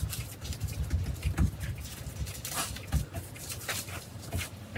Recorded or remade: recorded